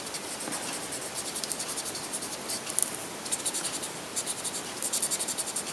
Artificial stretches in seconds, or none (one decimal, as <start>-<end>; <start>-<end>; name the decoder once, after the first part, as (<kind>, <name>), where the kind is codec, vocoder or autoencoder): 0.0-2.8 (vocoder, BigVGAN v2); 3.4-5.7